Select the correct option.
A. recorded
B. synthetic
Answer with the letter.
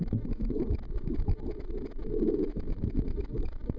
B